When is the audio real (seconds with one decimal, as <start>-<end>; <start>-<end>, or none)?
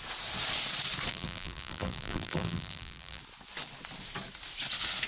0.0-1.1; 3.2-5.1